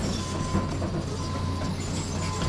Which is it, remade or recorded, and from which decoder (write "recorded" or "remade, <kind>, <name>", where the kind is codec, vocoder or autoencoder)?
recorded